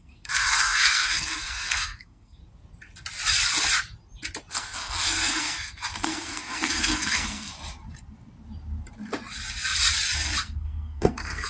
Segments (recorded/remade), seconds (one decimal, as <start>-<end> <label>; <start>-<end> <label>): 0.0-2.4 remade; 2.4-4.5 recorded; 4.5-7.5 remade; 7.5-10.4 recorded; 10.4-11.5 remade